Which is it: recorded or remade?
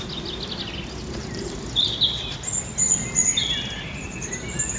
recorded